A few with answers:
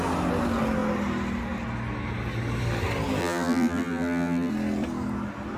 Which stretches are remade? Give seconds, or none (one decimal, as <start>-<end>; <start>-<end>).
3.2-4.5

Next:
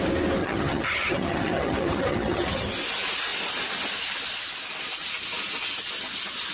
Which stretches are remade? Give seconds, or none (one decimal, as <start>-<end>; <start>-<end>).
0.4-2.7

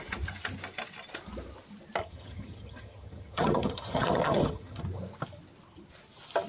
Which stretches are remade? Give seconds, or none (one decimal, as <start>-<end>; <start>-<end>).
2.0-4.8

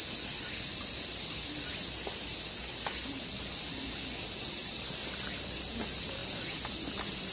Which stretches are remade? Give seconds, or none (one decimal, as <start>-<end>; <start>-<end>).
none

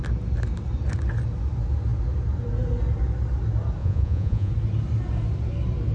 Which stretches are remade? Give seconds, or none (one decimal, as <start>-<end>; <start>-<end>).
3.8-4.5

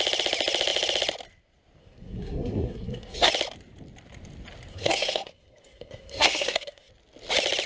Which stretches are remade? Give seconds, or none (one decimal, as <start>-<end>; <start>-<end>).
1.8-3.3; 4.7-6.9